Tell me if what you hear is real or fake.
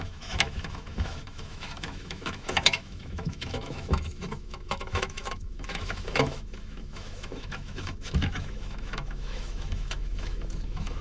fake